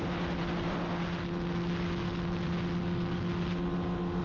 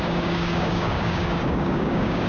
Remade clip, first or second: second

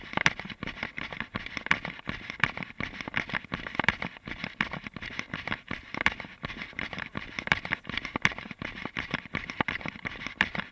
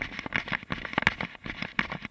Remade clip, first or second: first